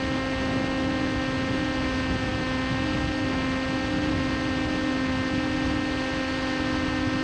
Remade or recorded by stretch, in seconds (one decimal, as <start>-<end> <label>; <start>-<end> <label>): 0.0-7.2 recorded